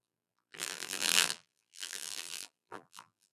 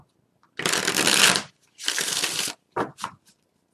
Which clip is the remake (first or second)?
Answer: first